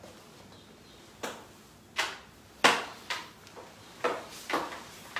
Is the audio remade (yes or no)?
no